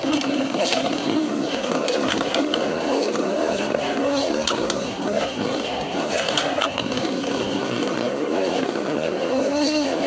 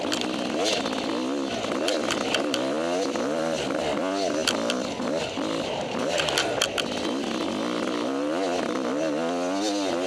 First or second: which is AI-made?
first